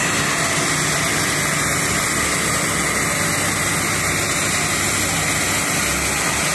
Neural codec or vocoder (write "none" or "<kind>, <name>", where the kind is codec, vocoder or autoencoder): none